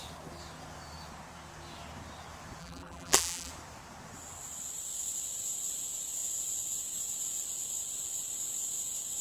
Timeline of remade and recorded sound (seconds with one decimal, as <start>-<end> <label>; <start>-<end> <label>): 0.0-2.6 recorded; 2.6-3.5 remade; 3.5-9.2 recorded